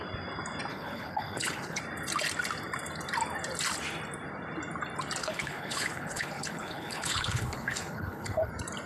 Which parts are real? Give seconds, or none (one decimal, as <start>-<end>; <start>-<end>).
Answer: 0.0-0.7; 1.8-5.2; 8.5-8.9